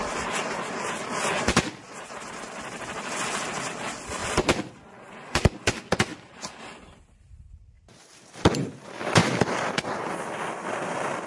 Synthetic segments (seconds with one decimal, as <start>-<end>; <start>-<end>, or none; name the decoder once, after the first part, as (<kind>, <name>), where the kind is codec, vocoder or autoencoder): 6.1-8.7 (vocoder, BigVGAN v2); 9.2-10.1